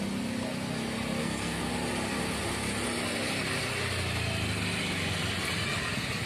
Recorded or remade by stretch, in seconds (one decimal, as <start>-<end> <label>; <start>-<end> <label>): 0.0-1.2 recorded; 1.2-1.7 remade; 1.7-6.3 recorded